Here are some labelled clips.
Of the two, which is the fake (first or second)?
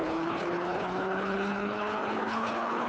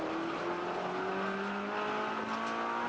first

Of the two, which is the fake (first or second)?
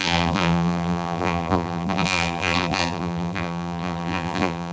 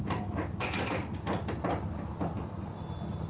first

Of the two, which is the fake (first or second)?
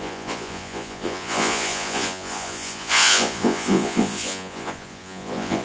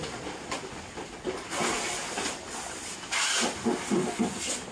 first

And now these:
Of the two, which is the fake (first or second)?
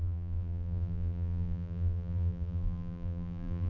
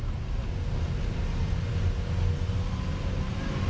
first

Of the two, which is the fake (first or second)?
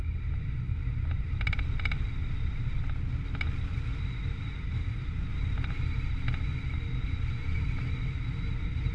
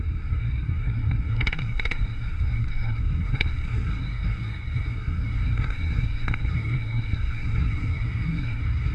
second